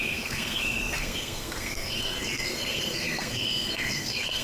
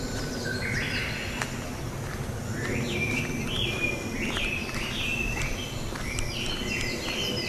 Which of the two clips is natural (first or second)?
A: second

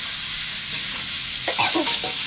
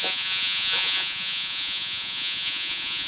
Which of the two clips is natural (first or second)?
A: first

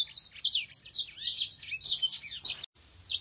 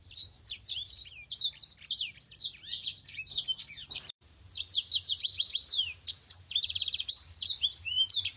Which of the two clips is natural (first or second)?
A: first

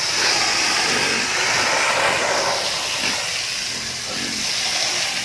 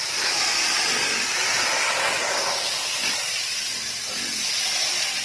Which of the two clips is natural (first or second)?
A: first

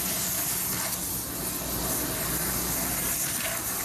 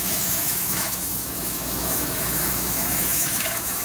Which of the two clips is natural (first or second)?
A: first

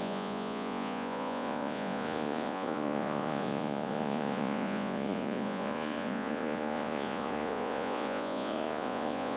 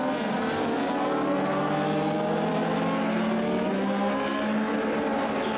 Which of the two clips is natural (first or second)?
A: second